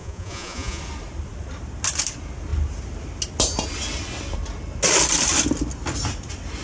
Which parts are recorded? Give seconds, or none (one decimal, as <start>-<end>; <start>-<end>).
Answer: 0.8-6.6